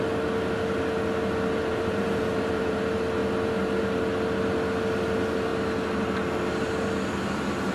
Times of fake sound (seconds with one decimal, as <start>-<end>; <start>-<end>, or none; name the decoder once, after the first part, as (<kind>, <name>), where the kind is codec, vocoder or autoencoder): 1.7-2.8 (vocoder, BigVGAN v2)